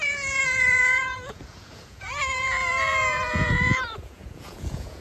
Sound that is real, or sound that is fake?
fake